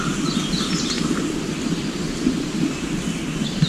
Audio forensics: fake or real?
real